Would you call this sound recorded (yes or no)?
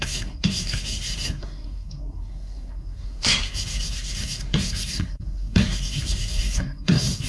no